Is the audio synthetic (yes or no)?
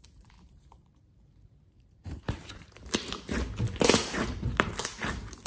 yes